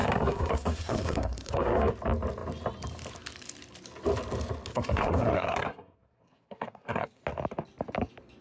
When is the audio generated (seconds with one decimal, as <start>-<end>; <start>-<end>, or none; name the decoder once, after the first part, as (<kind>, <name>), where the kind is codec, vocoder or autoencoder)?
0.0-1.9 (codec, SNAC); 4.7-7.2